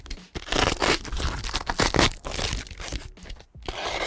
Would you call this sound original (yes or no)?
yes